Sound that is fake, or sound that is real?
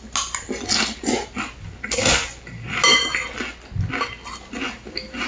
real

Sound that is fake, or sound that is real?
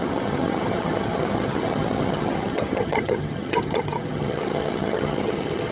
fake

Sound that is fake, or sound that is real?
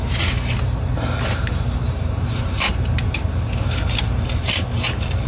real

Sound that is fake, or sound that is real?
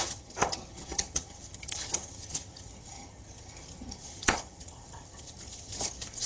fake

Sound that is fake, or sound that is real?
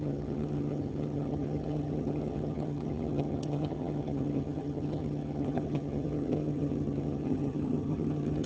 fake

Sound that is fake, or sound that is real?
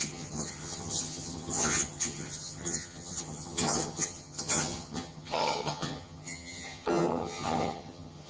fake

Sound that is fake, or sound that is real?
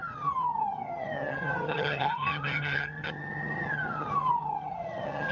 fake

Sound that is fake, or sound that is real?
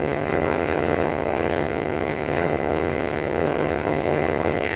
fake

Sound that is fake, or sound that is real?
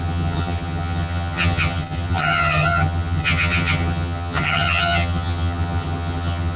fake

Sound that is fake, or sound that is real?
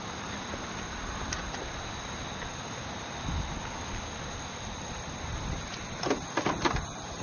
real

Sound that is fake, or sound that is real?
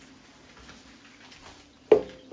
real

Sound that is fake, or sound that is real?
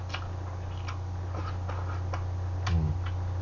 real